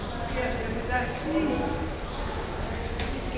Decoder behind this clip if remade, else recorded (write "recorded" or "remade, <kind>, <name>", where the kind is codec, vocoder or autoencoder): recorded